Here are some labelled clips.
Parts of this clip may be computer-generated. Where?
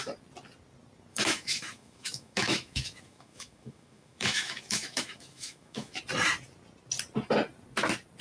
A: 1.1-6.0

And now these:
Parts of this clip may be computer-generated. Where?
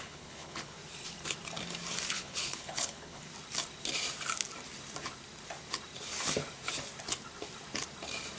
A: 0.0-0.8; 2.1-3.3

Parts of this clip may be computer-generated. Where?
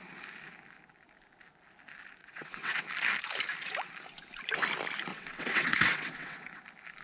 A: 2.2-2.8; 5.1-6.6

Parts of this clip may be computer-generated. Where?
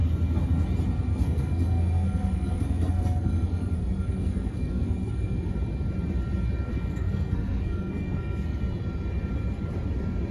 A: 1.1-5.5; 6.7-8.6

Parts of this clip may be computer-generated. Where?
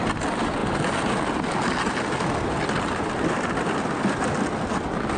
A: none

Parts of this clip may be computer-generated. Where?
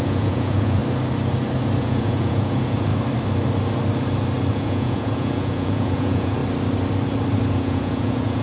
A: 0.0-0.8; 1.8-2.9; 4.5-6.4; 7.5-8.4